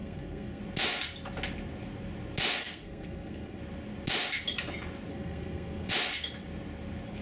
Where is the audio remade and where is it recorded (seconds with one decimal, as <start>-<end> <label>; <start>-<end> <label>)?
0.0-0.6 remade; 0.6-2.6 recorded; 2.6-3.6 remade; 3.6-5.1 recorded; 5.1-5.9 remade; 5.9-7.2 recorded

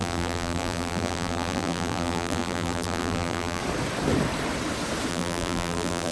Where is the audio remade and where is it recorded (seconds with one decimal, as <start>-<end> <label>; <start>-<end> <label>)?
0.0-3.6 remade; 3.6-5.1 recorded; 5.1-6.1 remade

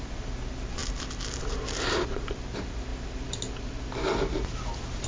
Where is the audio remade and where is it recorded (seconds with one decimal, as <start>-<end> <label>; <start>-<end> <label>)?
0.0-5.1 recorded

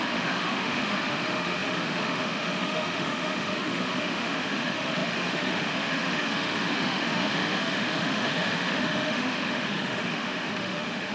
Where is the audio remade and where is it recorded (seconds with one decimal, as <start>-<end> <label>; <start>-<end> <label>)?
0.0-11.1 remade

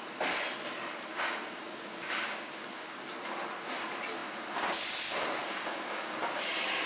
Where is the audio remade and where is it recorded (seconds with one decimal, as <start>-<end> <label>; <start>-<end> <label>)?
0.0-1.1 recorded; 1.1-3.0 remade; 3.0-5.4 recorded; 5.4-6.9 remade

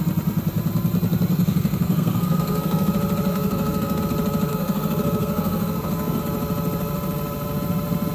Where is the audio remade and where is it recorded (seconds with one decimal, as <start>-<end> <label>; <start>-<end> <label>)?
0.0-1.3 recorded; 1.3-2.9 remade; 2.9-3.3 recorded; 3.3-4.0 remade; 4.0-4.5 recorded; 4.5-6.2 remade; 6.2-8.1 recorded